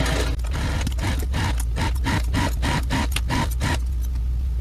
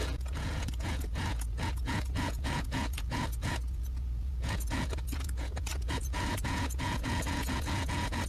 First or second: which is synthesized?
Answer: second